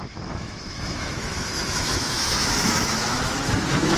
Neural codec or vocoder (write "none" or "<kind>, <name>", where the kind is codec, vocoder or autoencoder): autoencoder, DAC-VAE